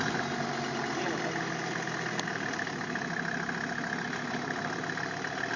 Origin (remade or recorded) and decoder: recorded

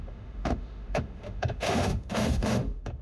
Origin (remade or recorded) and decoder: remade, autoencoder, DAC-VAE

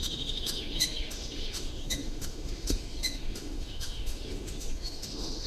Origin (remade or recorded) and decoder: remade, autoencoder, DAC-VAE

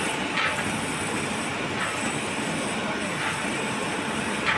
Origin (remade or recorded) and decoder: recorded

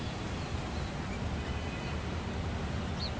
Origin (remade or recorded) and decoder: recorded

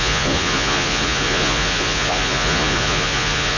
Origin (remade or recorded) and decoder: remade, vocoder, Vocos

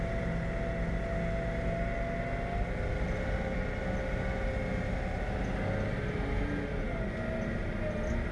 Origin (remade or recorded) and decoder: recorded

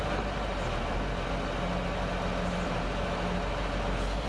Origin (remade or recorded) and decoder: recorded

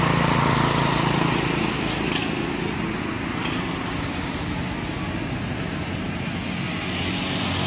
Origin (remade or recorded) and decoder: recorded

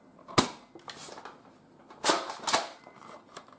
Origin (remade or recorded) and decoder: recorded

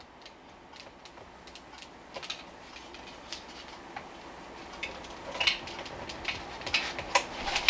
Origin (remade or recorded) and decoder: recorded